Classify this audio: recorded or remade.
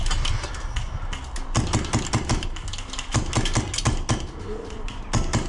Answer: recorded